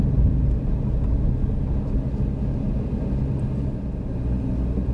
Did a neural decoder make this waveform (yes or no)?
no